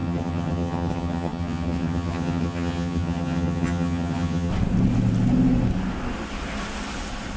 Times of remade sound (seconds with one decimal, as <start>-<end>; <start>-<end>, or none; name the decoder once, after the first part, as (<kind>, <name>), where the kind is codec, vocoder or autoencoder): 0.0-4.5 (vocoder, HiFi-GAN)